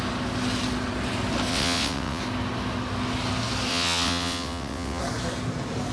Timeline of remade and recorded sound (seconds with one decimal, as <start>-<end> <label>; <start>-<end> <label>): 0.0-1.5 recorded; 1.5-2.2 remade; 2.2-3.7 recorded; 3.7-5.0 remade; 5.0-5.9 recorded

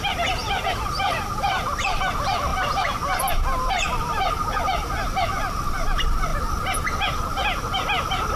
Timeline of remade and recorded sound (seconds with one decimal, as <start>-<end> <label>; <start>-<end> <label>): 0.0-8.4 recorded